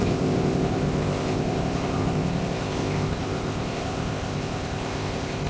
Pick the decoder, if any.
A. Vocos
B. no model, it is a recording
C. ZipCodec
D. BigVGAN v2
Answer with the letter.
C